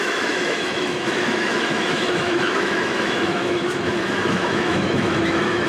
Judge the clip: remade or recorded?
remade